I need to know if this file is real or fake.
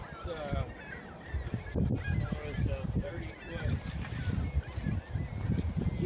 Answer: real